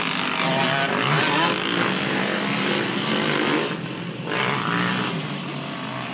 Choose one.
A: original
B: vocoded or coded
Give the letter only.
A